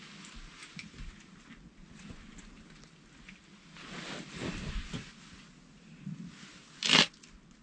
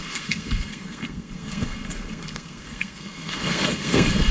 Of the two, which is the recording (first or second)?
first